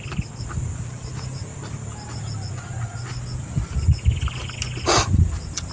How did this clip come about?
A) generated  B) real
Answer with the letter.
B